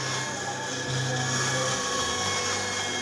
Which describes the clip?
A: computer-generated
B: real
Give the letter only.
B